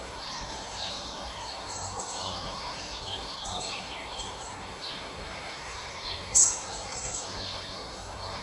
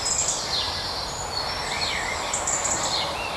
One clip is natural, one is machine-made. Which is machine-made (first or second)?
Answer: first